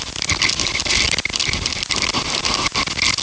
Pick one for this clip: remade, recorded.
recorded